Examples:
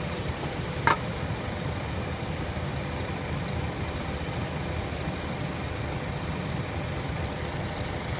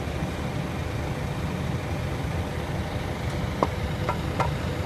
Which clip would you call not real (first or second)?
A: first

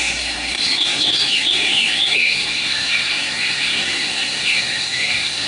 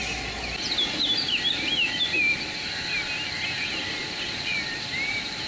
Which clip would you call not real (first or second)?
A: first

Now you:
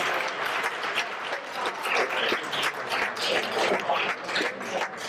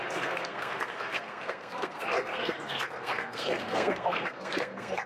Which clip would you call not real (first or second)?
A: second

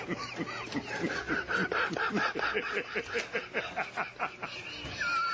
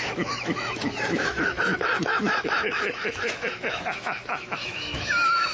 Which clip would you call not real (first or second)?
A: second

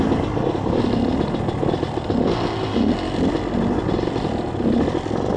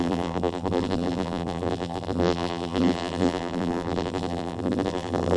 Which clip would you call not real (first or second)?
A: second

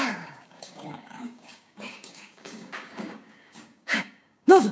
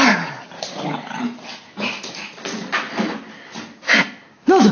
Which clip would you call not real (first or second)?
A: first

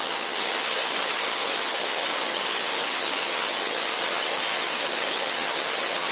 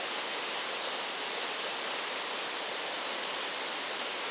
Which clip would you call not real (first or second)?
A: first